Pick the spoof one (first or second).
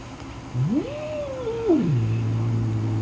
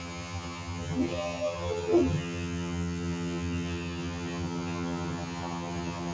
second